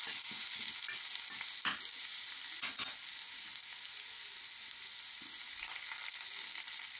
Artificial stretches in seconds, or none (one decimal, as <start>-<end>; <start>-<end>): none